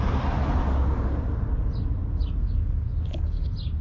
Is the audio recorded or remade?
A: recorded